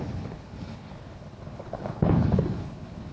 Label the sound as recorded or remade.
remade